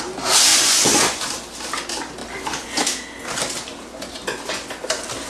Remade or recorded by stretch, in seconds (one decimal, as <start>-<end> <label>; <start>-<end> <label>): 0.0-0.5 recorded; 0.5-1.2 remade; 1.2-5.3 recorded